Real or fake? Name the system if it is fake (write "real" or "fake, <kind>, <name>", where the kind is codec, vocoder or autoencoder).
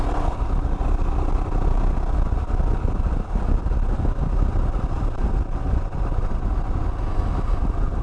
real